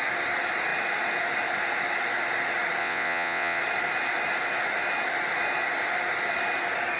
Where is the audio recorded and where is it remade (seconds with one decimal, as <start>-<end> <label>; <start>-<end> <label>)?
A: 0.0-2.8 recorded; 2.8-3.6 remade; 3.6-7.0 recorded